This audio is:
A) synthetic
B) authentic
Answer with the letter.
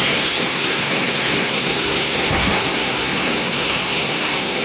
A